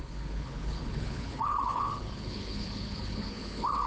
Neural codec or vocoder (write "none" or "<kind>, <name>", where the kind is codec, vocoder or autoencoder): codec, HILCodec